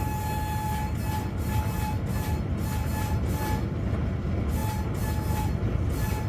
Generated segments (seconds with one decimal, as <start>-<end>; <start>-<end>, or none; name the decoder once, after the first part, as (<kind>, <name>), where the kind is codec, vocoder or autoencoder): none